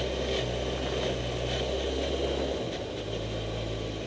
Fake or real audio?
real